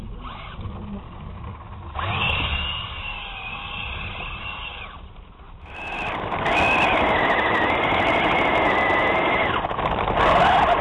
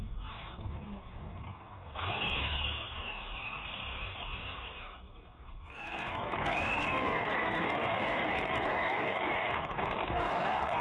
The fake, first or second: second